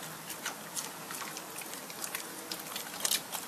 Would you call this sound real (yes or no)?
yes